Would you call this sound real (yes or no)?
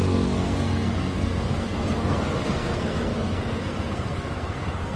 no